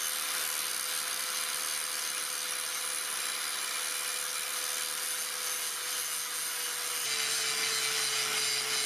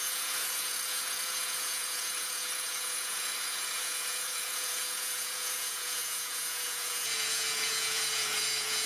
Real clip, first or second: first